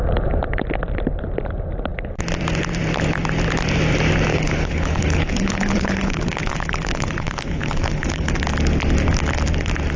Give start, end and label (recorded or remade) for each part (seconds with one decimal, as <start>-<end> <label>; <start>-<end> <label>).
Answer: 0.0-4.3 recorded; 4.3-8.4 remade; 8.4-10.0 recorded